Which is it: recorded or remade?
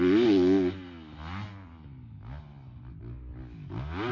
recorded